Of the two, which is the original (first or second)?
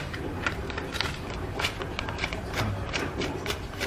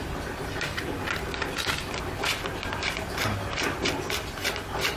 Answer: second